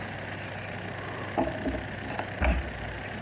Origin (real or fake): real